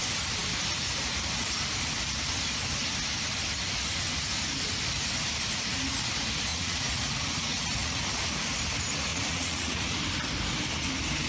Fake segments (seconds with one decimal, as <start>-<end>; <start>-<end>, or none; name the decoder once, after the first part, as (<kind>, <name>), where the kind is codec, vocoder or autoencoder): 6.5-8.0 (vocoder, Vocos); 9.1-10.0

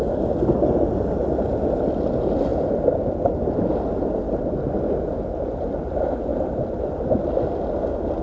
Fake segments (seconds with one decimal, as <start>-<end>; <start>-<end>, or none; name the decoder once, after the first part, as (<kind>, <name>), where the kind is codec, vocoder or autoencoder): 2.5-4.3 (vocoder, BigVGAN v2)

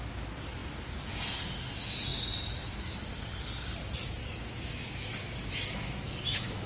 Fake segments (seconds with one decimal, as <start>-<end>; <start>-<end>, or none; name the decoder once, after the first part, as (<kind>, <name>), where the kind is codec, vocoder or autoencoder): 4.2-6.7 (autoencoder, DAC-VAE)